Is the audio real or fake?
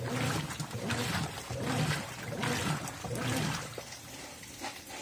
fake